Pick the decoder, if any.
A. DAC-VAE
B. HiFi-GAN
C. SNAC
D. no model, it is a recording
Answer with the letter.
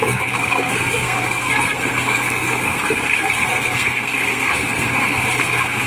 C